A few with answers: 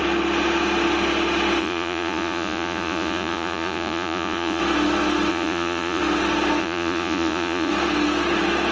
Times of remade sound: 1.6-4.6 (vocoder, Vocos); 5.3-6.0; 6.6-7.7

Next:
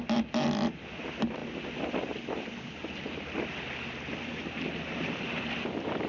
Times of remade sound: none

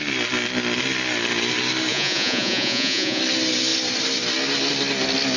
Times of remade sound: 1.9-3.2 (vocoder, Vocos)

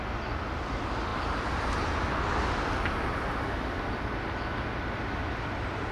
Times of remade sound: none

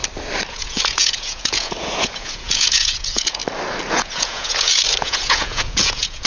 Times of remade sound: 0.5-3.4 (vocoder, Vocos); 3.9-6.3